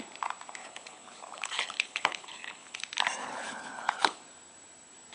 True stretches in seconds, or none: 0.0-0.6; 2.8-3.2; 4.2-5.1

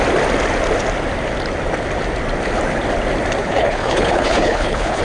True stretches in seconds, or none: 0.0-3.4

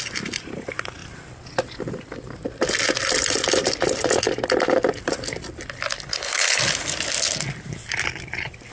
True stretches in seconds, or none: 0.0-6.1; 6.6-8.7

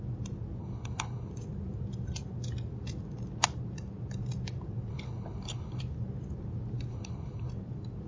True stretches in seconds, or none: 0.0-0.6; 1.3-4.9; 5.8-6.9; 7.5-8.1

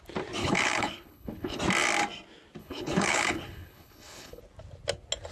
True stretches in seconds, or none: 0.0-0.4; 1.6-2.6; 4.4-5.3

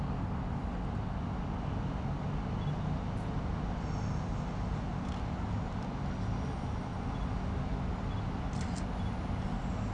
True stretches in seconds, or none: 0.0-9.9